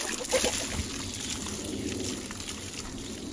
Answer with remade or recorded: recorded